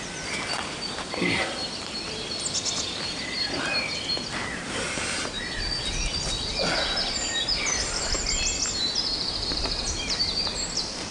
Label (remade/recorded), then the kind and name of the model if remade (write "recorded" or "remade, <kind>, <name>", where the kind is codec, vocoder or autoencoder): remade, vocoder, BigVGAN v2